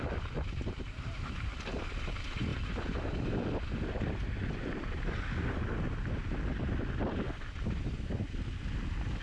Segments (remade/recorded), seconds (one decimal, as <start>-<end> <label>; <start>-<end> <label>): 0.0-9.2 recorded